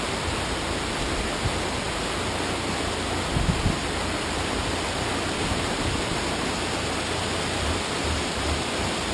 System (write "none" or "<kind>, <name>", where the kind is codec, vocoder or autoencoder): none